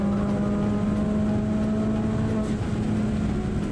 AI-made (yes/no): no